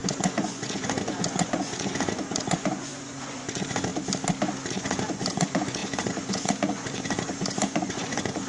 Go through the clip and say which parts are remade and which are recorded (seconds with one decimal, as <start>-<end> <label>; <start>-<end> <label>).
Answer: 0.0-3.9 remade; 3.9-4.7 recorded; 4.7-8.5 remade